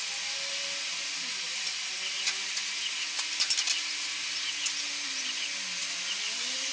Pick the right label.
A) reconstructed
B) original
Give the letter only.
B